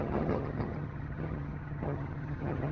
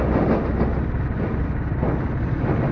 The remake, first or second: first